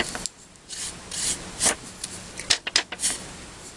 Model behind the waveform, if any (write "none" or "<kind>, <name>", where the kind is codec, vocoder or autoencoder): none